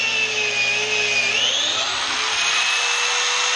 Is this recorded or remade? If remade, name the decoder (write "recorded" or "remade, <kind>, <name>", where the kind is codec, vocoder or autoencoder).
recorded